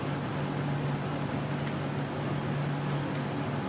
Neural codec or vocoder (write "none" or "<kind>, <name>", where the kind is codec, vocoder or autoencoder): none